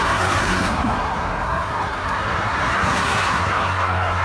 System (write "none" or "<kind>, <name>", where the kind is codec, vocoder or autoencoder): codec, SNAC